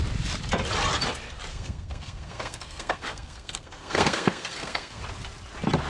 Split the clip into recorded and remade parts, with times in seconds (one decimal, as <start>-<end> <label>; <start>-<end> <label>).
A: 0.0-1.5 recorded; 1.5-5.0 remade; 5.0-5.9 recorded